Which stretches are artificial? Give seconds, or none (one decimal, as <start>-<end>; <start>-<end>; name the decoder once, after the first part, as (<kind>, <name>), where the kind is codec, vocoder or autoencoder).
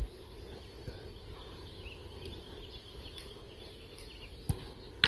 none